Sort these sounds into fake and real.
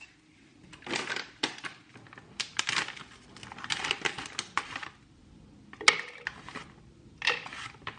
real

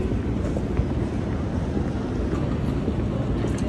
real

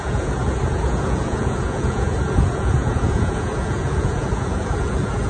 fake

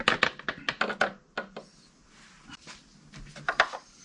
real